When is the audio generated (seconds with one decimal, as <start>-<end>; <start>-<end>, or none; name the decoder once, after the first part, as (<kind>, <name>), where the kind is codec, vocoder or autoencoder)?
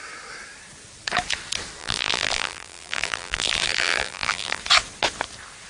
1.8-4.6 (vocoder, BigVGAN v2)